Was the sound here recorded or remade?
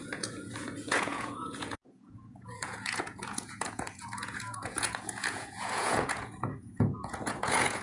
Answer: remade